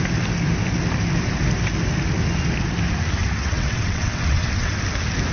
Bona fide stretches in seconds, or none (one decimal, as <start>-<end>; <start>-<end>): 0.0-3.2; 4.7-5.3

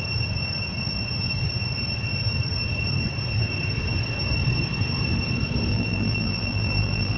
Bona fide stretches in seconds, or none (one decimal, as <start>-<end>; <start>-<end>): 0.0-5.7